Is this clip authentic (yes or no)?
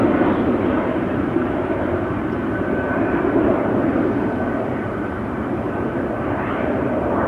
no